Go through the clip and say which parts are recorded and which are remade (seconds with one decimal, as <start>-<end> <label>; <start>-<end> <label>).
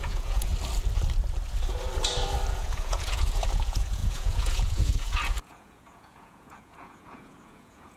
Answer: 0.0-0.5 remade; 0.5-2.5 recorded; 2.5-8.0 remade